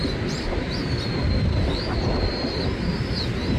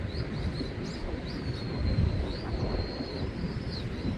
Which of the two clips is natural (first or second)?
first